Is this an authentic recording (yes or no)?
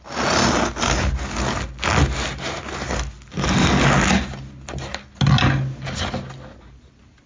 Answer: yes